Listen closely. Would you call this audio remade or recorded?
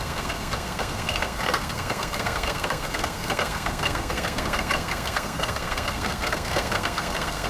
remade